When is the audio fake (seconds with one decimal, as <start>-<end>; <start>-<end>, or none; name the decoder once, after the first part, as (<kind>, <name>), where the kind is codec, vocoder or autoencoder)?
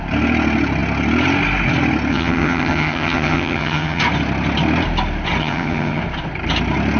2.1-4.0 (vocoder, HiFi-GAN); 5.4-6.0